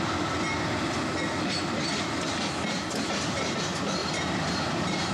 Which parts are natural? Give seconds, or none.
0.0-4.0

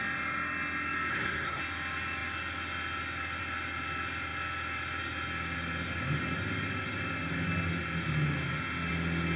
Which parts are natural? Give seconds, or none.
0.0-1.1; 1.6-9.4

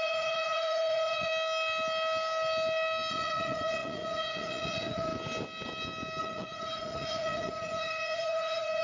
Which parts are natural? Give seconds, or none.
1.3-3.1; 5.1-6.2

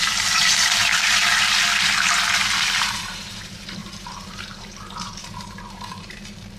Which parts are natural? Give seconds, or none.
0.9-2.6

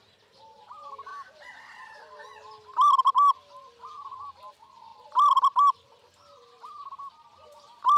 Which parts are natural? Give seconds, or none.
0.0-8.0

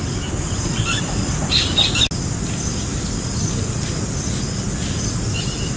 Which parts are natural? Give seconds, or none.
0.0-5.8

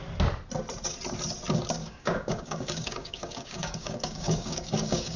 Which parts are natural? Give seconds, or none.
0.0-1.8

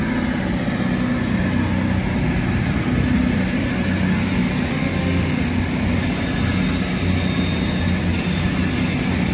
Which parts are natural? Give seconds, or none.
0.0-4.7; 5.4-9.3